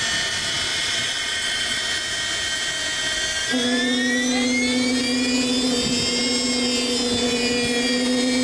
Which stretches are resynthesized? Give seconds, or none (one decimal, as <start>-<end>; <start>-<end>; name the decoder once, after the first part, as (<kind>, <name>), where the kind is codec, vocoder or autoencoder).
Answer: 0.7-1.8 (vocoder, WaveNeXt)